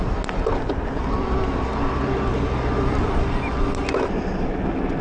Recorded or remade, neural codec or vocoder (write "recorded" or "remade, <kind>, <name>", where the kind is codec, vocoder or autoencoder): recorded